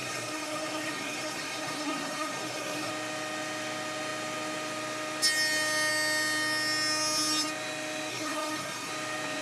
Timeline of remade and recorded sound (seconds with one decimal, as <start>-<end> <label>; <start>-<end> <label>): 0.0-2.9 remade; 2.9-8.1 recorded; 8.1-8.9 remade; 8.9-9.4 recorded